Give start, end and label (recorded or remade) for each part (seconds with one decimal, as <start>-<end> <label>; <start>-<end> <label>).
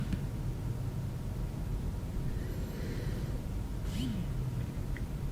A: 0.0-1.7 recorded; 1.7-3.8 remade; 3.8-4.5 recorded; 4.5-5.3 remade